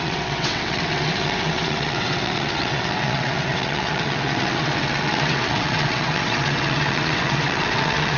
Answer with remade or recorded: remade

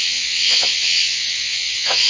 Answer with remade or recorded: remade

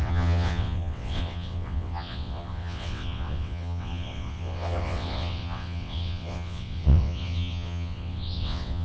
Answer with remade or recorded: remade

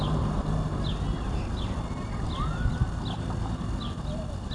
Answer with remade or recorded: recorded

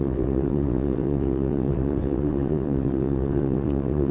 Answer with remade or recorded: remade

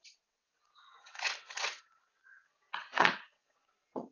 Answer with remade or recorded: remade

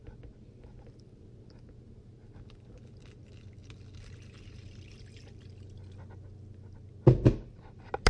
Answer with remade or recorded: recorded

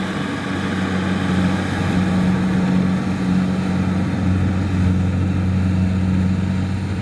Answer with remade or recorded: recorded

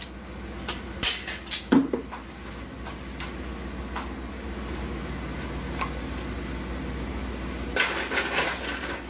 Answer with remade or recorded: recorded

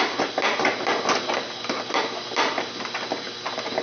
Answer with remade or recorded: recorded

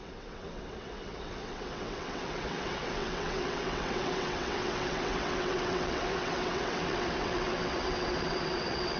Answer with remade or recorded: remade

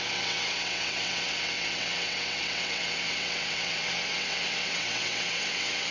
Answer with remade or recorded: remade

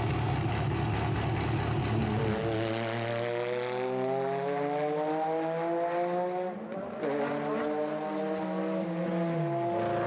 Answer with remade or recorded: recorded